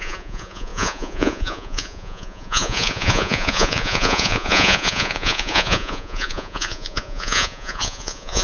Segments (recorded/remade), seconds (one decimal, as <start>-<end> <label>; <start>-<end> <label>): 0.0-8.4 remade